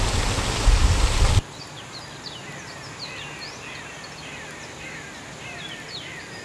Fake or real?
real